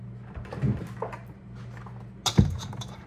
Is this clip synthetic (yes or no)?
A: no